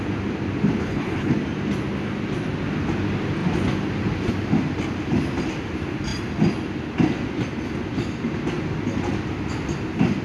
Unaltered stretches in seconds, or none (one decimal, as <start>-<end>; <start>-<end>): 0.0-0.8; 1.3-10.2